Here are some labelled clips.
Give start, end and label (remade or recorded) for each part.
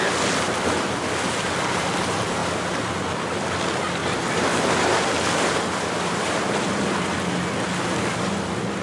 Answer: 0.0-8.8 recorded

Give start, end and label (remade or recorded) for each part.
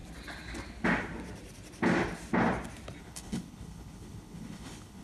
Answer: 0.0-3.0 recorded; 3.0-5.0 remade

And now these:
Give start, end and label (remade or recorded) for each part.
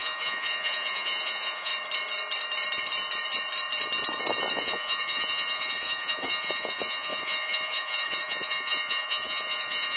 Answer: 0.0-1.7 remade; 1.7-4.5 recorded; 4.5-10.0 remade